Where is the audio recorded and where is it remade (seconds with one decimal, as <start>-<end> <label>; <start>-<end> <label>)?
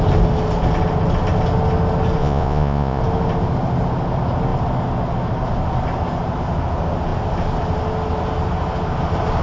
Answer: 0.0-2.2 recorded; 2.2-3.0 remade; 3.0-9.4 recorded